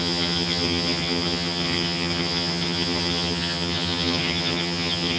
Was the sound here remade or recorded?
remade